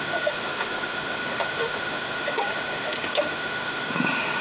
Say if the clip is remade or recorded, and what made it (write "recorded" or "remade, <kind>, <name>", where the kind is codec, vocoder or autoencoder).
remade, autoencoder, DAC-VAE